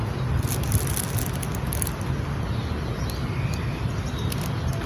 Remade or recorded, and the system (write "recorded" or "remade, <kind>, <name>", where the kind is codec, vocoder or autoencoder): recorded